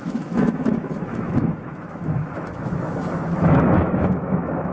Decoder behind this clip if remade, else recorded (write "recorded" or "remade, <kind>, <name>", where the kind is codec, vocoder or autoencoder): remade, autoencoder, DAC-VAE